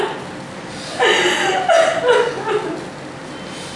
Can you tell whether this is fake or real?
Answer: real